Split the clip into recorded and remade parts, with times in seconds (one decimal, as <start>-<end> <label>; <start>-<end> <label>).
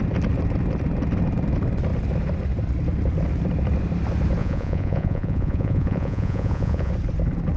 0.0-4.4 recorded; 4.4-6.9 remade; 6.9-7.6 recorded